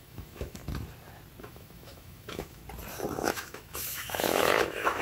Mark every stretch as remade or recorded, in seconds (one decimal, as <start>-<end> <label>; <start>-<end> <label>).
0.0-0.6 remade; 0.6-1.4 recorded; 1.4-2.6 remade; 2.6-3.3 recorded; 3.3-5.0 remade